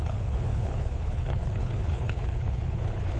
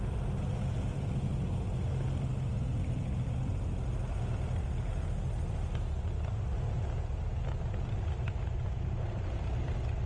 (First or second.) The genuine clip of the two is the second